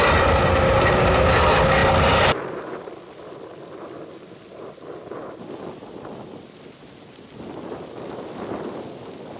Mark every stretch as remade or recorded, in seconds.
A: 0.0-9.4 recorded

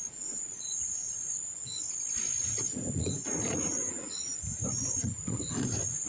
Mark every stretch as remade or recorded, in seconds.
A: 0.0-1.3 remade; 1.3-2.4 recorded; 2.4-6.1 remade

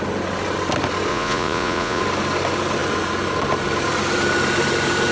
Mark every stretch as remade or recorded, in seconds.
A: 0.0-1.1 recorded; 1.1-2.0 remade; 2.0-5.1 recorded

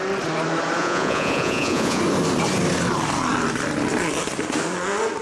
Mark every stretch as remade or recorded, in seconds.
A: 0.0-0.8 recorded; 0.8-2.0 remade; 2.0-5.2 recorded

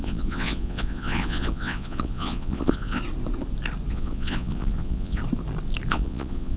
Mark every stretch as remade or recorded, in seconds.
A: 0.0-3.0 remade; 3.0-3.9 recorded; 3.9-5.2 remade; 5.2-5.9 recorded; 5.9-6.6 remade